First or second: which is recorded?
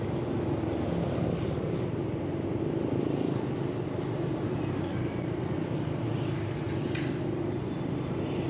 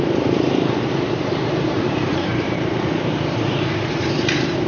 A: first